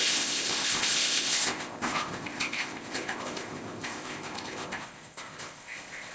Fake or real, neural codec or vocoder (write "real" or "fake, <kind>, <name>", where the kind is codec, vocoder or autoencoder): fake, codec, ZipCodec